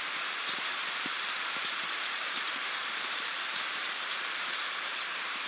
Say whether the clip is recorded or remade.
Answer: remade